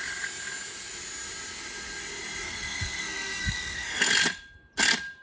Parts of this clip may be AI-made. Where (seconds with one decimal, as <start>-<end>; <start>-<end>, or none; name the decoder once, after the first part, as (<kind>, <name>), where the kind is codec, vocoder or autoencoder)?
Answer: 2.4-4.0 (codec, SNAC)